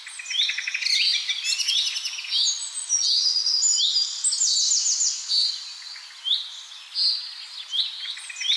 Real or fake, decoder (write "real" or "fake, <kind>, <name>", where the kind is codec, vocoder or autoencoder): real